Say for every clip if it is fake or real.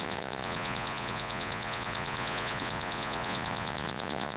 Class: fake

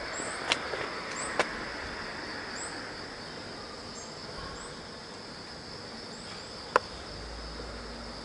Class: real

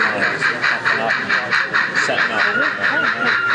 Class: real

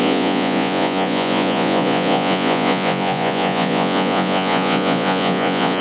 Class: fake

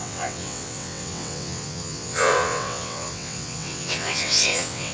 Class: fake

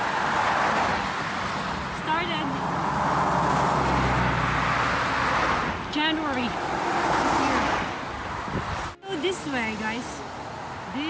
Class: real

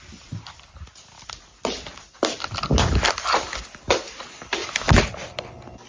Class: real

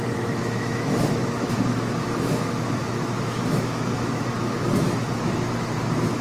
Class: fake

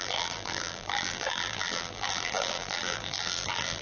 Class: fake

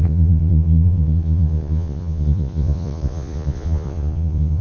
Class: fake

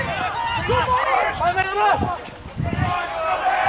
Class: real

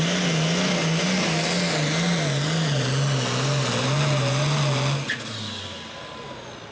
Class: real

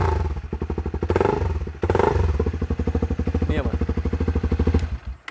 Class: real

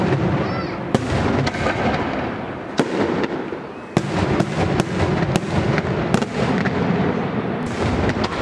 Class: real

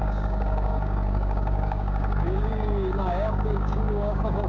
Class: fake